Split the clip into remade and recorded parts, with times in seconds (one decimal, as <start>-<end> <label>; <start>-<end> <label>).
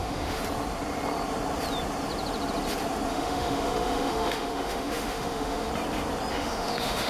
0.0-0.4 remade; 0.4-3.1 recorded; 3.1-5.7 remade; 5.7-6.3 recorded; 6.3-7.1 remade